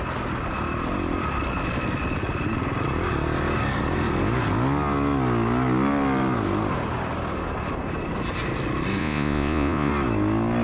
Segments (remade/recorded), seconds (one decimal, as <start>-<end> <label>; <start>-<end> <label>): 0.0-9.0 recorded; 9.0-9.9 remade; 9.9-10.6 recorded